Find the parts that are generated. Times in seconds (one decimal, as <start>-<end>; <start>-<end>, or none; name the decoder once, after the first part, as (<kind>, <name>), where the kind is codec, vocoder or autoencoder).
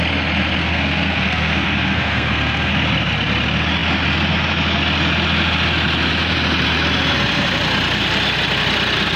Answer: 0.6-2.7 (codec, SNAC)